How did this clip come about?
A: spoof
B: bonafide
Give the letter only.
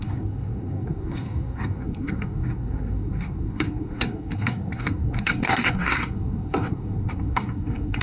A